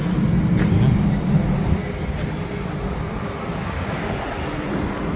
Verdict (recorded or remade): recorded